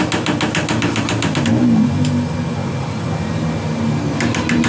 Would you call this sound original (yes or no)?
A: yes